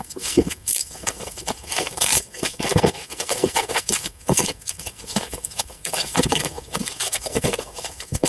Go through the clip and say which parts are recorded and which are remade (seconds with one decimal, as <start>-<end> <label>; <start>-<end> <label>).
0.0-8.3 remade